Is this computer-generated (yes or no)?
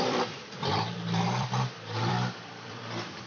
yes